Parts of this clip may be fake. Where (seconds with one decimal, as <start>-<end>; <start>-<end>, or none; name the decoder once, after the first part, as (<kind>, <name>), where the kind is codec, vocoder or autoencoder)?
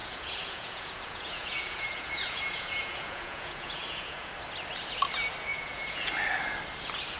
0.0-4.3 (vocoder, Vocos); 5.5-6.1